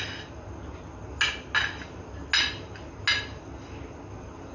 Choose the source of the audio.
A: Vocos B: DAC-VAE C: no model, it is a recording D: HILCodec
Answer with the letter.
C